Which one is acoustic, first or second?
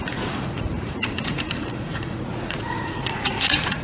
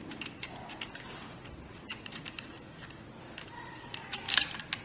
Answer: second